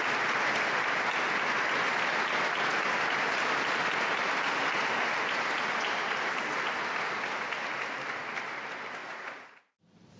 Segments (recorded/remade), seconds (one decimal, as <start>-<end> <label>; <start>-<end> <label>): 0.0-9.0 recorded; 9.0-9.6 remade; 9.6-10.2 recorded